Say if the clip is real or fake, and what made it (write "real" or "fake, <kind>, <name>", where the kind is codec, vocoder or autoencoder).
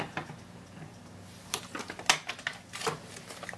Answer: real